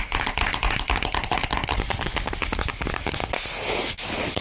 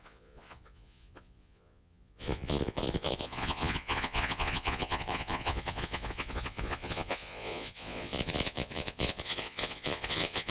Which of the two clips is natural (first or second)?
first